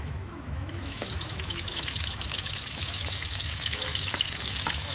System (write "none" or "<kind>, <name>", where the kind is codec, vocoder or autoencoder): autoencoder, DAC-VAE